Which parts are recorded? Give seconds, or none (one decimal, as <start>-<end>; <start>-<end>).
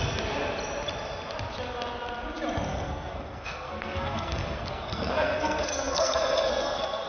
0.0-2.7